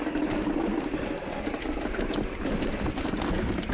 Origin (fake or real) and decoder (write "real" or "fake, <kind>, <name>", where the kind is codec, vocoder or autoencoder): real